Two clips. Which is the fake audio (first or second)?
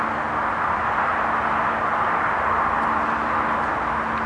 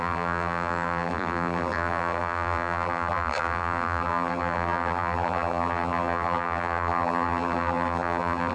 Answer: second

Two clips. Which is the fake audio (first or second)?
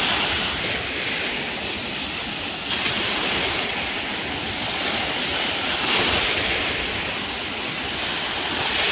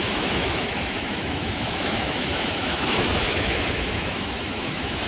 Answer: second